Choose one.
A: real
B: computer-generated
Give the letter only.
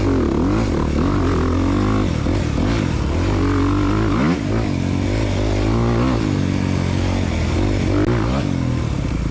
A